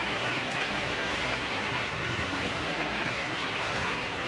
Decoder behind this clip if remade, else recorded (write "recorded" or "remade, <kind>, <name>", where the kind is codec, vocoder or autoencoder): remade, codec, SNAC